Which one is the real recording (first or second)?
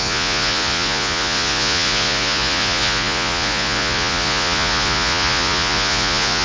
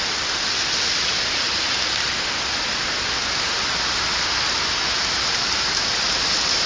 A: second